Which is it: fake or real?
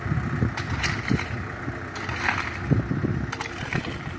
real